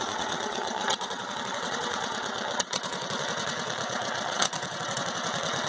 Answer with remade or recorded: remade